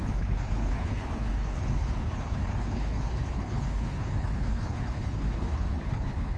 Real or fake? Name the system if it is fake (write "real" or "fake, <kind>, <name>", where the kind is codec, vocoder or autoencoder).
fake, codec, HILCodec